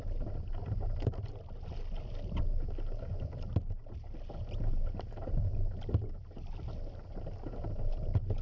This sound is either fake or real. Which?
real